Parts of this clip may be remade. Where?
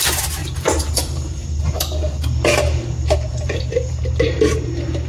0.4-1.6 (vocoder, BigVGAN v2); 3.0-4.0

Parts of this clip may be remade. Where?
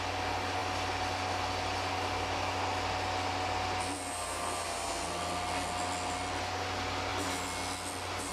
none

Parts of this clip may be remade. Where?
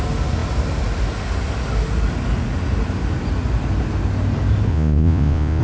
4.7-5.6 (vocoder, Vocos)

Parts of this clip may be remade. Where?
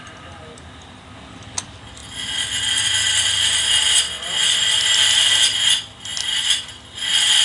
none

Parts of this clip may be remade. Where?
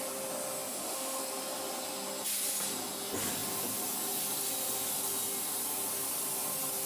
0.7-1.2 (autoencoder, DAC-VAE)